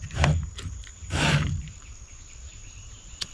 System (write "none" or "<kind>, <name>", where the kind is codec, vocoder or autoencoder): vocoder, BigVGAN v2